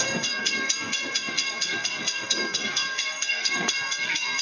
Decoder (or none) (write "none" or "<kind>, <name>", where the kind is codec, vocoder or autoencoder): codec, SNAC